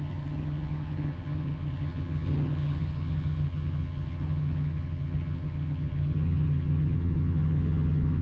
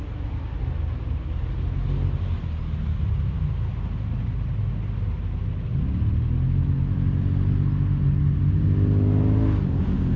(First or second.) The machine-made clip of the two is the first